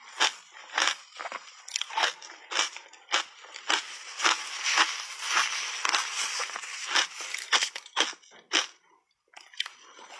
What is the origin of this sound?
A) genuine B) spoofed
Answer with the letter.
A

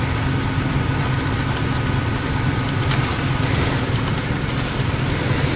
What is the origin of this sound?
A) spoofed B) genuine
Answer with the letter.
B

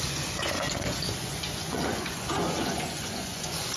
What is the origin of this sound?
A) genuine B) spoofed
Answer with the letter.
B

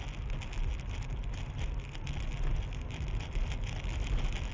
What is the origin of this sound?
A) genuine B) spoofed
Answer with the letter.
A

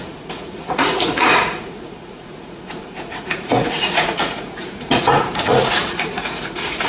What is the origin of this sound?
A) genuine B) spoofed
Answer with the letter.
B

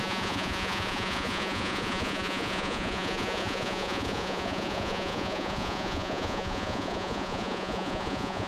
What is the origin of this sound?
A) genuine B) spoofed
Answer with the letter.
B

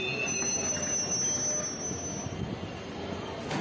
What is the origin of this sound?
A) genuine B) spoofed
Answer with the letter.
A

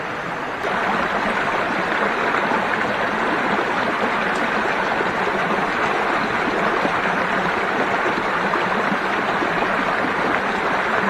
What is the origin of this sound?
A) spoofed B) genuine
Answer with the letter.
B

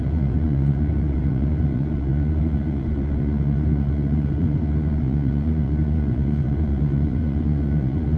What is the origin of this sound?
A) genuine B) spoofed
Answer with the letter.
B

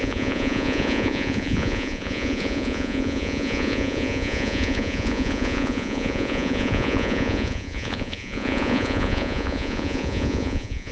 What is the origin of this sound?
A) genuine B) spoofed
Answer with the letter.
B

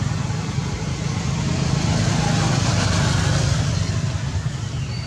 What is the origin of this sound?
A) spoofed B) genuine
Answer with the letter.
B